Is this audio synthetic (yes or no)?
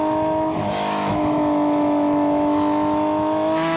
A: yes